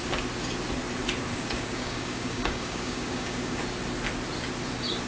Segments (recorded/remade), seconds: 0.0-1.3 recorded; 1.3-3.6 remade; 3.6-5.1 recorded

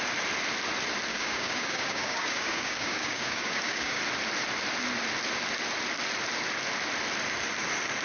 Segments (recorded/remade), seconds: 0.0-1.1 recorded; 1.1-4.0 remade; 4.0-8.0 recorded

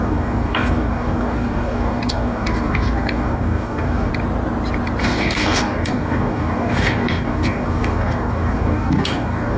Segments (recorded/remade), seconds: 0.0-4.1 remade; 4.1-5.0 recorded; 5.0-9.6 remade